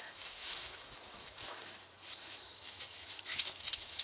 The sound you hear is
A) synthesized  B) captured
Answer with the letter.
A